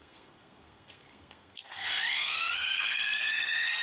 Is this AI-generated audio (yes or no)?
yes